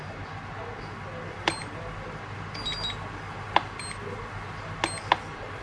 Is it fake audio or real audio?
real